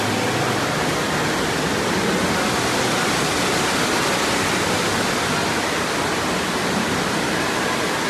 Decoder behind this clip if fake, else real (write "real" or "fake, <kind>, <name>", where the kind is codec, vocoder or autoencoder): real